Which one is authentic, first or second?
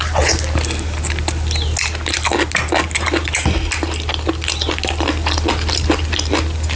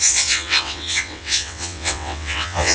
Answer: first